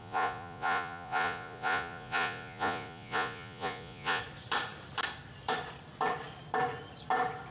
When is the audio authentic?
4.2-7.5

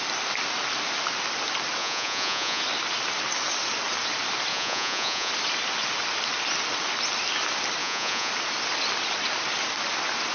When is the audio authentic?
0.0-1.8; 2.6-4.5; 5.3-7.8; 8.3-10.3

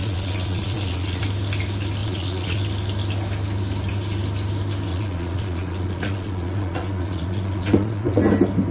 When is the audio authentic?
1.2-2.0; 2.6-4.9; 8.2-8.7